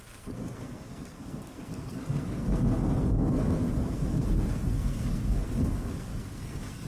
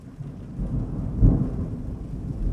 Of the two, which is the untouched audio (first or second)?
second